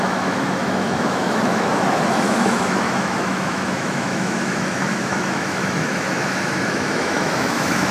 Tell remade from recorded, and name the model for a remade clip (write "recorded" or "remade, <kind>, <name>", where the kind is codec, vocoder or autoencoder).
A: remade, autoencoder, DAC-VAE